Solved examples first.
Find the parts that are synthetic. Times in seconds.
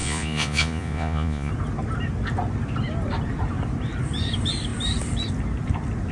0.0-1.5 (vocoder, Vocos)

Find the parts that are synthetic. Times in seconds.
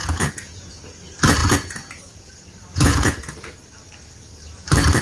0.0-1.0 (vocoder, Vocos); 1.4-2.3; 2.7-3.6